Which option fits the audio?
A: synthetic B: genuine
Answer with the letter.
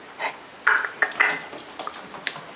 B